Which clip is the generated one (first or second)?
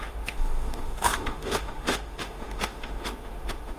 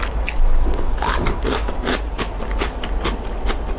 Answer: first